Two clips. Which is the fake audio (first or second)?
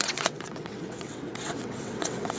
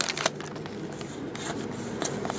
first